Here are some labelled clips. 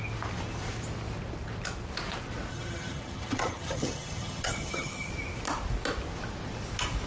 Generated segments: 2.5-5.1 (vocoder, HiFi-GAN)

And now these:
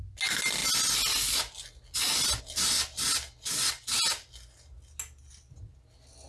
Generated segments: none

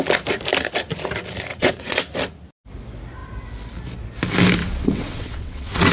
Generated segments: 1.5-2.0 (vocoder, WaveNeXt); 4.6-5.9

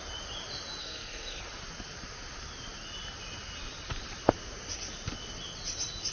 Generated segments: 0.8-1.4 (codec, SNAC)